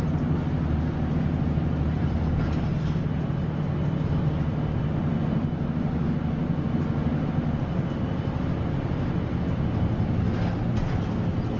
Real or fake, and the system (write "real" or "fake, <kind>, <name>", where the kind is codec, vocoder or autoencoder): real